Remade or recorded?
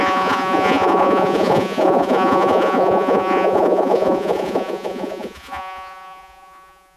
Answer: remade